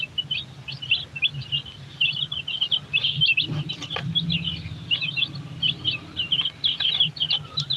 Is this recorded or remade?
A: recorded